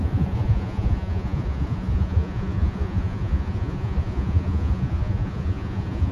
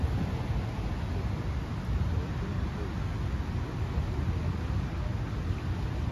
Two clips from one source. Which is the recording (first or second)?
second